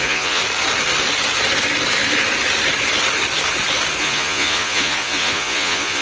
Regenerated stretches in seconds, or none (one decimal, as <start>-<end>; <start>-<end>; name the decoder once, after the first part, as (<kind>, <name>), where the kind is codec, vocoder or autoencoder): 0.0-0.4 (vocoder, Vocos); 4.0-6.0